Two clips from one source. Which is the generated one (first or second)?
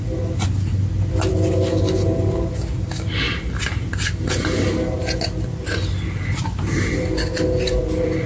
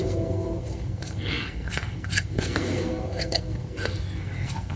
second